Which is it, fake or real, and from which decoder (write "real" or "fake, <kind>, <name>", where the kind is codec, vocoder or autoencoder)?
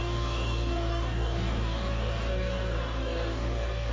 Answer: fake, codec, DAC